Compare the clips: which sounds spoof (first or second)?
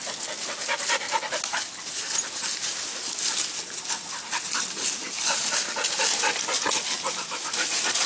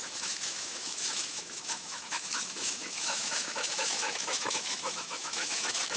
second